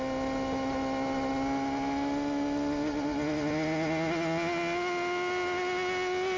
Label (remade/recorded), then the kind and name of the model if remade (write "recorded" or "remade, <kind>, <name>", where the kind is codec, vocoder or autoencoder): recorded